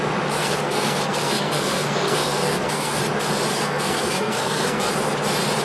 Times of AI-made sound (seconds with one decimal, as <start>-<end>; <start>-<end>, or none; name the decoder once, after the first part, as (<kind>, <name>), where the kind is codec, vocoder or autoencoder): 0.4-3.0 (codec, SNAC); 3.5-4.9